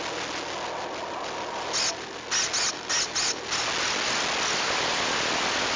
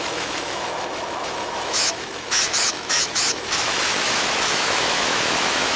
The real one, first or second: first